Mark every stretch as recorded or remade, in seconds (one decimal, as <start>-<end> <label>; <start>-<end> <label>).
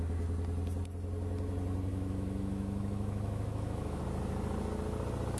0.0-1.9 recorded; 1.9-4.0 remade; 4.0-5.4 recorded